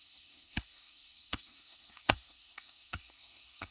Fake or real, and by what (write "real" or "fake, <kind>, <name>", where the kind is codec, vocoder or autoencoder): fake, codec, SNAC